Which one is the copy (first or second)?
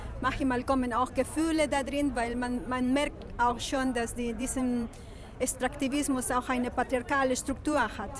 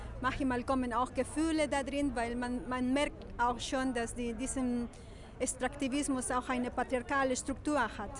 first